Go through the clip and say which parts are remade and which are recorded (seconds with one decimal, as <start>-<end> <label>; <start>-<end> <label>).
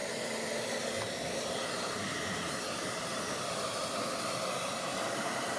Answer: 0.0-0.8 remade; 0.8-4.9 recorded; 4.9-5.6 remade